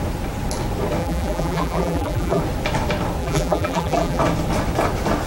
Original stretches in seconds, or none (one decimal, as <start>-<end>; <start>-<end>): 0.0-1.0; 2.4-3.2; 4.2-5.3